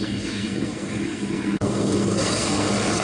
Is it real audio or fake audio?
fake